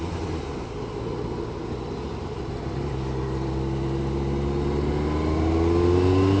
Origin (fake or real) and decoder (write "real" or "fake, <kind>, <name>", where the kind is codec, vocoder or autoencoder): real